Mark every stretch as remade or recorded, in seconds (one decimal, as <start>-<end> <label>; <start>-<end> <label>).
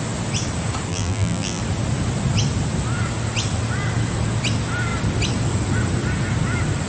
0.0-0.9 recorded; 0.9-1.6 remade; 1.6-6.9 recorded